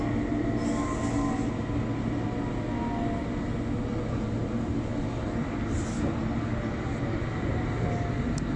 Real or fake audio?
real